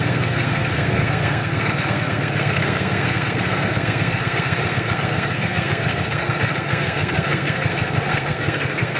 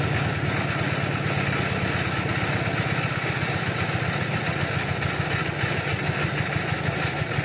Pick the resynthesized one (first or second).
first